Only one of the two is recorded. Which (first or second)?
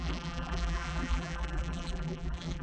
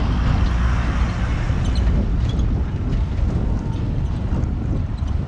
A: second